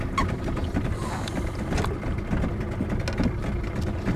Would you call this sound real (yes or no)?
yes